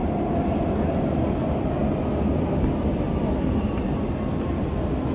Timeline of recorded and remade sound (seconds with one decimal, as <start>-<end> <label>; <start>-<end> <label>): 0.0-5.1 recorded